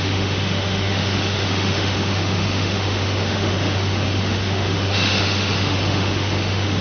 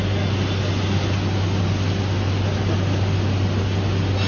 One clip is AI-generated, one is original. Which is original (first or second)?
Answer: second